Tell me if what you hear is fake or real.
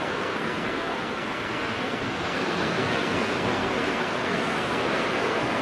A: fake